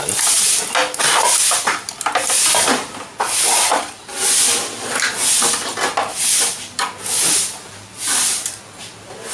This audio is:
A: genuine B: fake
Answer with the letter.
A